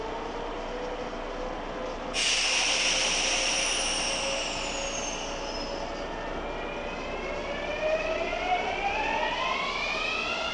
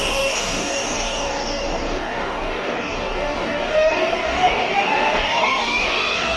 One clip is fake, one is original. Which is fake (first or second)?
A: second